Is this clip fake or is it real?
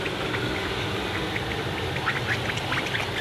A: real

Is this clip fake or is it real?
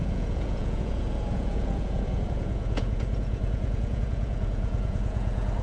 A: fake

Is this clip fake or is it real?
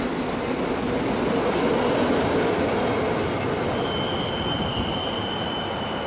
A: real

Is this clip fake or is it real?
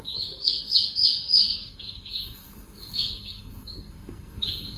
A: fake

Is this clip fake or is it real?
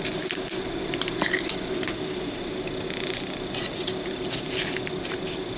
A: real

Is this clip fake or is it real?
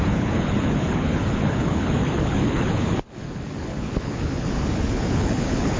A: fake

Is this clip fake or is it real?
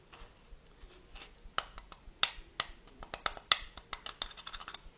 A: real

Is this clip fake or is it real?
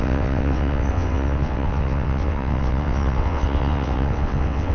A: fake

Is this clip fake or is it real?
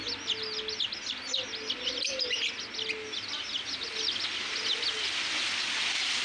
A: real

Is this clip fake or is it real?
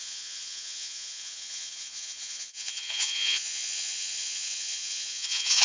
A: fake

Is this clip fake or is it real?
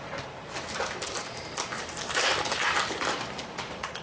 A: fake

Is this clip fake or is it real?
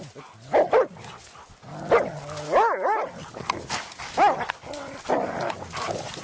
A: real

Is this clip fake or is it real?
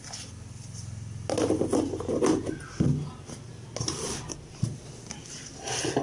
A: real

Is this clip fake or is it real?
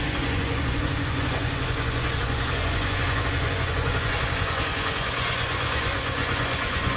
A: fake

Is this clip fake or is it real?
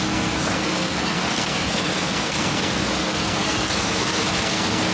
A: fake